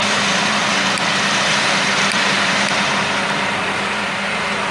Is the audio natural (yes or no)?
no